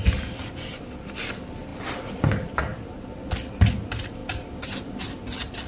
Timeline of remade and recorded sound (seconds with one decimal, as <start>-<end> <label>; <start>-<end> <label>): 0.0-5.7 recorded